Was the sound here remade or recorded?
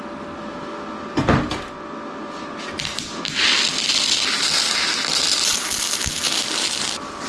recorded